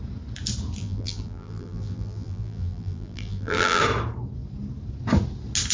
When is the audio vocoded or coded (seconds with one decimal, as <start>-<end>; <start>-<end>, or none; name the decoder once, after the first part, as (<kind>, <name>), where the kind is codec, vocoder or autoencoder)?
0.8-3.8 (vocoder, BigVGAN v2)